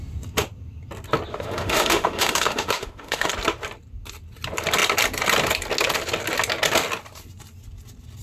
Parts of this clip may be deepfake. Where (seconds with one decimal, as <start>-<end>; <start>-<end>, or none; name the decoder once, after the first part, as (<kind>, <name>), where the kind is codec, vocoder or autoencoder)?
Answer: 1.3-3.3 (autoencoder, DAC-VAE)